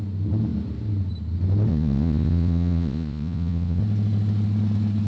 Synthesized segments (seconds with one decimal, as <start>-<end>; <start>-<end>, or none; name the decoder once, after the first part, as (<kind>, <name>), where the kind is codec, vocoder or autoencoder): 1.7-3.8 (vocoder, Vocos)